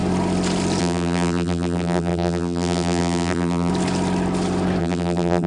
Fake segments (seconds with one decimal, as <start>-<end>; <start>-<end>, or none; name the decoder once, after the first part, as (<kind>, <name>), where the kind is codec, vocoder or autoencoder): 0.8-3.7 (vocoder, BigVGAN v2); 4.8-5.5